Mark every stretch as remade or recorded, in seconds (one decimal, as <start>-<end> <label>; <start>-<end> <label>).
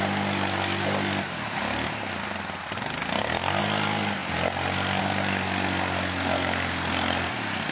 0.0-7.7 recorded